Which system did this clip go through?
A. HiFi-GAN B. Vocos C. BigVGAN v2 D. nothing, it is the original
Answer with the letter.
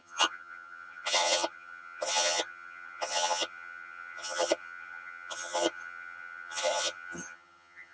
A